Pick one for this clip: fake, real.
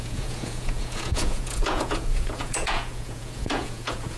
fake